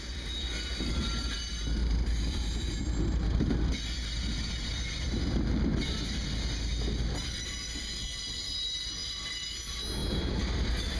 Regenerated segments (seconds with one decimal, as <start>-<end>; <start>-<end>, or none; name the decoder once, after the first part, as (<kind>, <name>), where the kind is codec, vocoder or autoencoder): 1.8-2.8 (vocoder, BigVGAN v2); 10.0-11.0